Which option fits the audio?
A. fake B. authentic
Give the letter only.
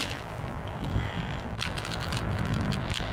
A